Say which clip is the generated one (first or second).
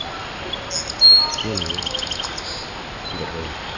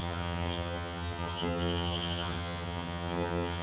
second